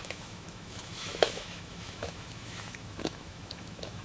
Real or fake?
fake